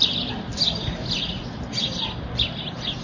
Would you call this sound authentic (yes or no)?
yes